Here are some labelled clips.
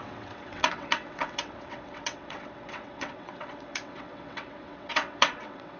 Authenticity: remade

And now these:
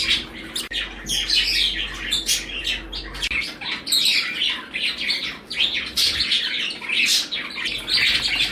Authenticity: recorded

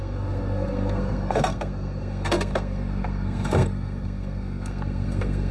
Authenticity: remade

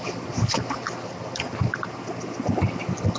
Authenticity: recorded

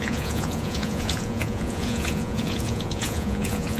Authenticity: remade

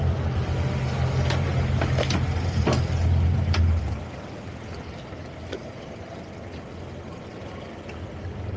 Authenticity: recorded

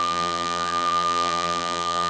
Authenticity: remade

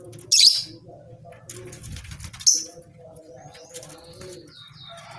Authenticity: recorded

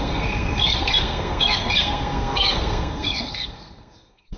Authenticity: remade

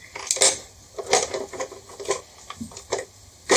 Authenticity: recorded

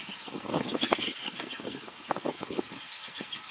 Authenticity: remade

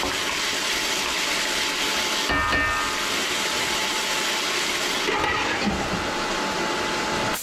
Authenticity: recorded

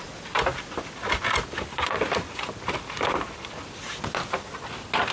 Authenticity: recorded